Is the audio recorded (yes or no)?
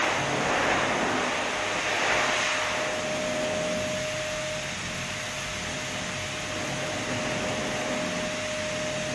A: yes